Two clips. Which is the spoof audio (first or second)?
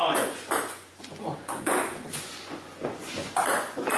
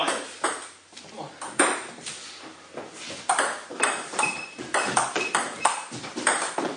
first